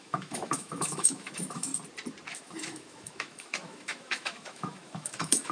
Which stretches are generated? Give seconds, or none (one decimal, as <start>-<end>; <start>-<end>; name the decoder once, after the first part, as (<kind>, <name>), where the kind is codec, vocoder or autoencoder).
0.0-1.7 (autoencoder, DAC-VAE); 2.3-5.5